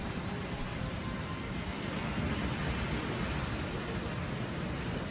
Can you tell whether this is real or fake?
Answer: real